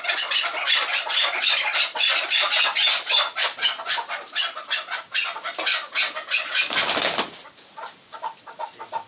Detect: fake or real real